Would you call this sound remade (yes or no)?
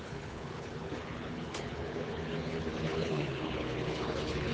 yes